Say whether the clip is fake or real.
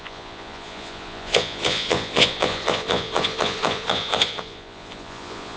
fake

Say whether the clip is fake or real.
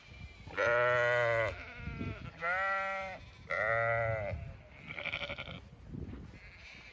real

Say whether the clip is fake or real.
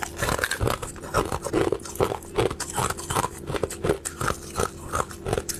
real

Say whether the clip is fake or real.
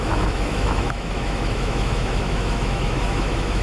fake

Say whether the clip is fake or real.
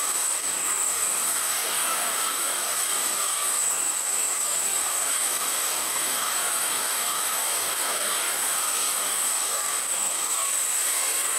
fake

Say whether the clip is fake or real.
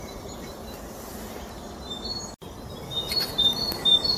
real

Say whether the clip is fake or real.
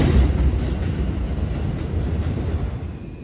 real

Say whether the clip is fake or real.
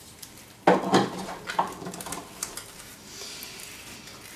real